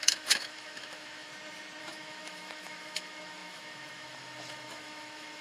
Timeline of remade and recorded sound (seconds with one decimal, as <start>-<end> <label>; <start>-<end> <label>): 0.0-1.3 remade; 1.3-1.8 recorded; 1.8-5.4 remade